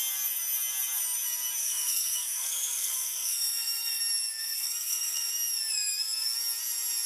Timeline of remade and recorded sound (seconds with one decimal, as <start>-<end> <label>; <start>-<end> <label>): 0.0-1.6 recorded; 1.6-4.0 remade; 4.0-4.4 recorded; 4.4-5.3 remade; 5.3-7.1 recorded